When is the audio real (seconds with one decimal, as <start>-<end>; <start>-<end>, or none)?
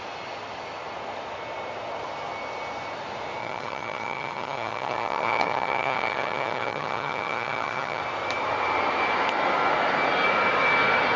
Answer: 0.0-3.4; 8.0-11.2